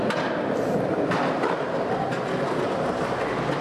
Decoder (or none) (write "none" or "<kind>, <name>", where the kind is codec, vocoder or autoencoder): none